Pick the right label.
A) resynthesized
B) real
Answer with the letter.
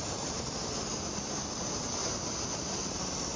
B